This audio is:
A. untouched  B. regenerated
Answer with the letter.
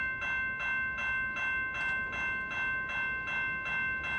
A